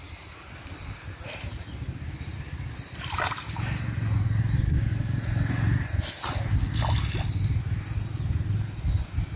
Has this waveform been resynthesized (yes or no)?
no